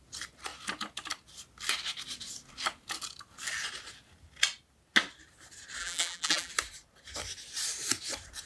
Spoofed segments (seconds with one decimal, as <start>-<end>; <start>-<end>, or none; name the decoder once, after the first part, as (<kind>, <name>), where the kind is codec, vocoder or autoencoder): 5.8-6.5 (vocoder, BigVGAN v2)